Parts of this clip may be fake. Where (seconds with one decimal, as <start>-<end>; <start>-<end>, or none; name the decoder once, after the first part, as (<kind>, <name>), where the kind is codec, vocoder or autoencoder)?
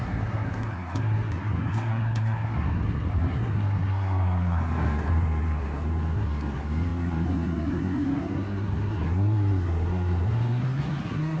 0.0-11.4 (codec, SNAC)